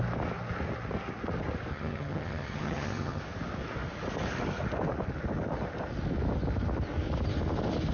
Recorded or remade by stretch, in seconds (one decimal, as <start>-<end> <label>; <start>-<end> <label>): 0.0-1.7 recorded; 1.7-3.2 remade; 3.2-7.9 recorded